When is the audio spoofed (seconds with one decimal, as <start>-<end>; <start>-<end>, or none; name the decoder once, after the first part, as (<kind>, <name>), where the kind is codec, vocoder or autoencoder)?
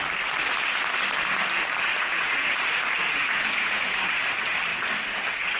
1.9-2.5 (vocoder, Vocos); 3.2-3.8